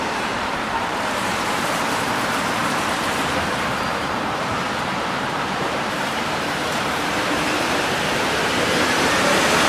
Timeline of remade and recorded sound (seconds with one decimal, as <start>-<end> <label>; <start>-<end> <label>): 0.0-9.7 remade